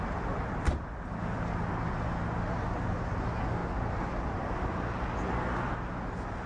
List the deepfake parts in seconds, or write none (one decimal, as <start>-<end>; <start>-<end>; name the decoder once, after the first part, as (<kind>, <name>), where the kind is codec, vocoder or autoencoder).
none

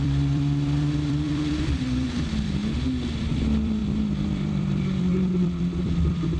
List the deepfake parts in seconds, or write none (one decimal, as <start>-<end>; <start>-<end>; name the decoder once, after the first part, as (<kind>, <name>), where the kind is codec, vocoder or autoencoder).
0.0-2.6 (vocoder, BigVGAN v2); 3.2-6.4

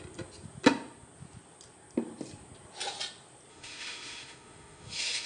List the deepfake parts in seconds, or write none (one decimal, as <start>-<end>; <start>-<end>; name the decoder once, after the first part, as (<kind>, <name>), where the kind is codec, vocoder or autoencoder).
3.5-5.3 (autoencoder, DAC-VAE)

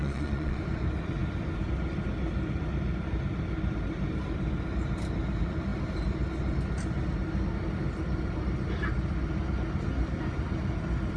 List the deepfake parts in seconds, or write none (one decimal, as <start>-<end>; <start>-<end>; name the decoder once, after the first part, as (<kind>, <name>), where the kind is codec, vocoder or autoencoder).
0.0-0.6 (vocoder, Vocos)

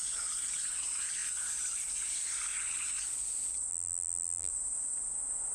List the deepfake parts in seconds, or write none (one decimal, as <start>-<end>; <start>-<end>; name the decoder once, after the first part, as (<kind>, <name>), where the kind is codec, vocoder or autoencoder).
3.7-4.5 (vocoder, BigVGAN v2)

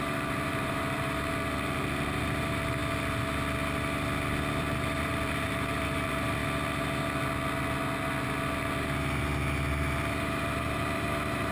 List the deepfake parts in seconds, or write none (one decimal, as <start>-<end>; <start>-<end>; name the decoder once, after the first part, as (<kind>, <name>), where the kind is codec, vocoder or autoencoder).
0.0-2.8 (vocoder, BigVGAN v2); 4.6-6.4; 9.8-11.5